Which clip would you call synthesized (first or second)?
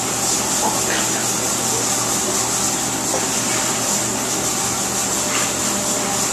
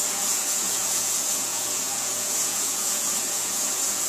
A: second